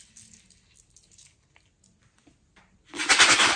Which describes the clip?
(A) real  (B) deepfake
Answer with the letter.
A